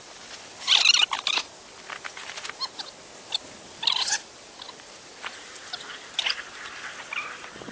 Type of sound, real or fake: real